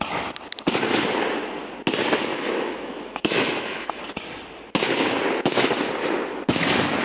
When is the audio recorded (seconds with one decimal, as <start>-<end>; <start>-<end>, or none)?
0.0-2.3; 4.0-7.0